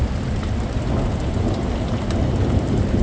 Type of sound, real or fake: real